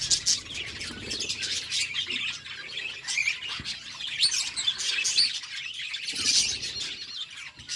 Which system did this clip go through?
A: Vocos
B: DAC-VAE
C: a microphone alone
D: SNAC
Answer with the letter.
C